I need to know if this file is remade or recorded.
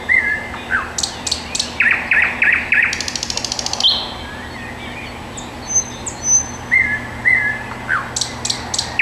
recorded